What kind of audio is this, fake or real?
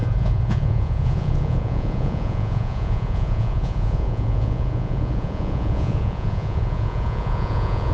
fake